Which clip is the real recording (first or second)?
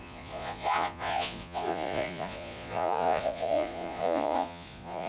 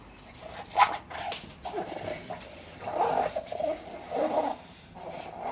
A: second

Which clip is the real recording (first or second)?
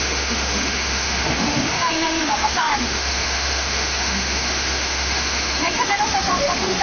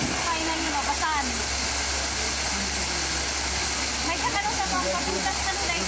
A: second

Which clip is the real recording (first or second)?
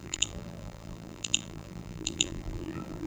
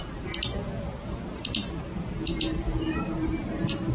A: second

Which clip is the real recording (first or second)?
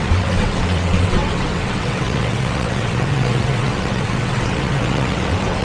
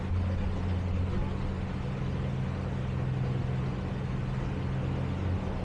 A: second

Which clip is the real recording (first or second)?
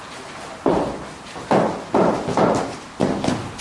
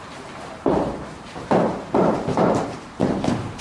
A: first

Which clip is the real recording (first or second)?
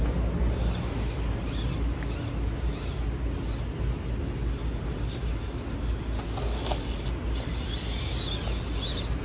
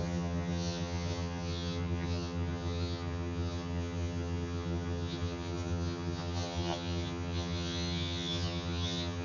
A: first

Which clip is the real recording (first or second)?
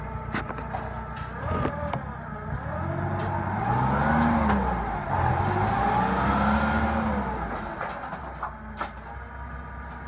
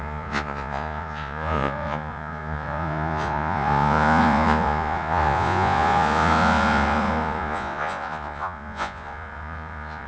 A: first